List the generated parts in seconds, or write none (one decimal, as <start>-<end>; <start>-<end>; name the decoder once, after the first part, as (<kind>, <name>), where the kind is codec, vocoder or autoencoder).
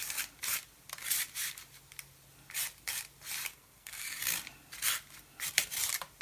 3.5-4.2 (codec, SNAC)